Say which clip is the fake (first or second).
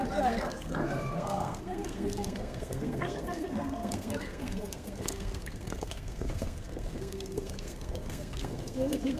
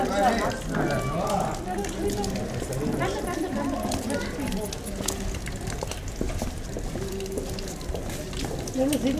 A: first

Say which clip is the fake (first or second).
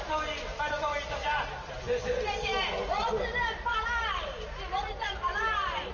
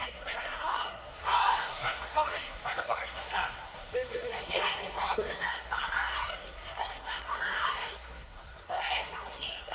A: second